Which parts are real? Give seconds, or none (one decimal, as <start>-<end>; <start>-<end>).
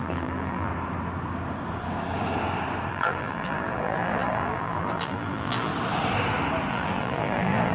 0.7-2.9; 5.7-6.7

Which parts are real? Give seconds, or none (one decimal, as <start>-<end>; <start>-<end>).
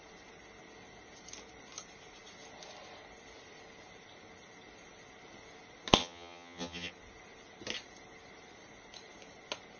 0.0-6.0; 6.9-9.8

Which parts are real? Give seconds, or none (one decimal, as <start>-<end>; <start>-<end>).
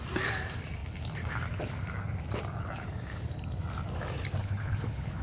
0.0-4.4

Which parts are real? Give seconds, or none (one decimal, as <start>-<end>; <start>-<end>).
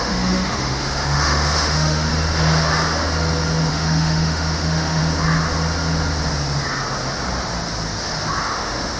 2.1-3.7; 5.0-8.4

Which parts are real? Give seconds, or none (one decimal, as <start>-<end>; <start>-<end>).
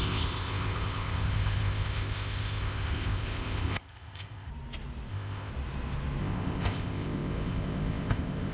4.5-5.1; 5.5-6.2